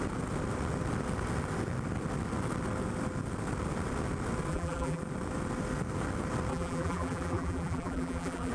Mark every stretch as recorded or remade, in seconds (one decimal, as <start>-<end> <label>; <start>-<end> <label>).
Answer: 0.0-4.5 recorded; 4.5-5.0 remade; 5.0-6.5 recorded; 6.5-8.5 remade